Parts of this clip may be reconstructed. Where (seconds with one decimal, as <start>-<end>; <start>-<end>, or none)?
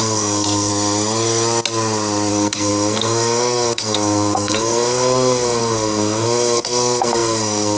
0.0-0.7; 2.3-7.8